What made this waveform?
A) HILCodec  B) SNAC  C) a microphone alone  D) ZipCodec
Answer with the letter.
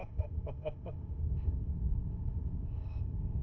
D